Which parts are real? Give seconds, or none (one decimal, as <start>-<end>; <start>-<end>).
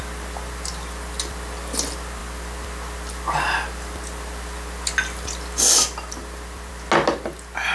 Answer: 0.0-7.7